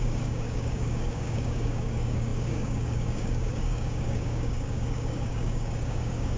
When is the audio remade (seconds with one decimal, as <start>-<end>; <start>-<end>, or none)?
0.0-6.4